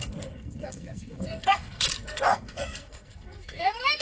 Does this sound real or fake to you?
fake